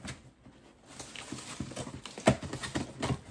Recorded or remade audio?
recorded